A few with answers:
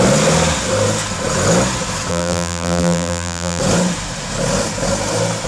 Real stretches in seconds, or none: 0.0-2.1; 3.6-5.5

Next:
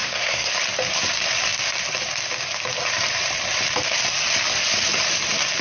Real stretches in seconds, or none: 0.5-5.6

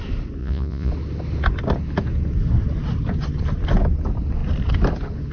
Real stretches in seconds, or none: 0.0-0.4; 0.9-5.3